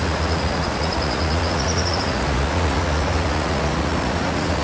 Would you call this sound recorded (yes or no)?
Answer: no